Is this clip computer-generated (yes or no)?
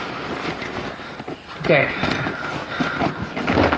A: no